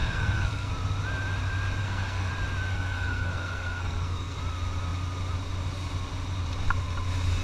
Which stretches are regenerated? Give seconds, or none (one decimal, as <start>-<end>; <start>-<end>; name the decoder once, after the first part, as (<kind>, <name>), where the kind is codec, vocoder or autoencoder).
0.0-0.7 (codec, SNAC); 1.8-2.3; 2.7-4.4